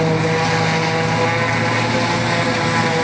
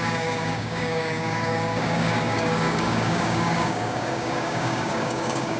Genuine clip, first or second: first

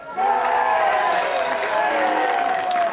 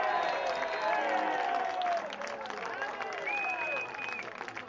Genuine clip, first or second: second